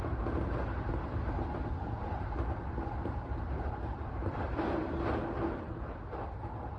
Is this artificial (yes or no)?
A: no